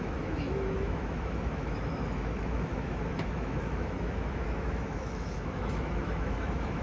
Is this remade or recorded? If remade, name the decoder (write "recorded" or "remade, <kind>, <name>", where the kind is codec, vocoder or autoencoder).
remade, autoencoder, DAC-VAE